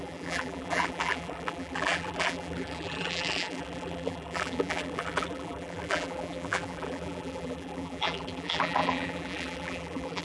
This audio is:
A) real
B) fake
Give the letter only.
B